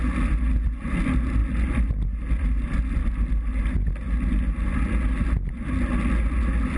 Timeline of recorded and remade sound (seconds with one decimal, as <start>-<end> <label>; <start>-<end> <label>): 0.0-6.8 recorded